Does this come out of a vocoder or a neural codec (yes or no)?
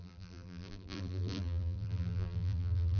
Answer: yes